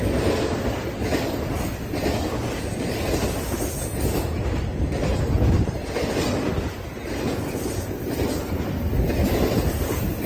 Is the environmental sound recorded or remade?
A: recorded